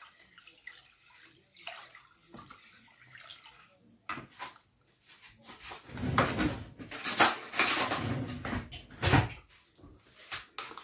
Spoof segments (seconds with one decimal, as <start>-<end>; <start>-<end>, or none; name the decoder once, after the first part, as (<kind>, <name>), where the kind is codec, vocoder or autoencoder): none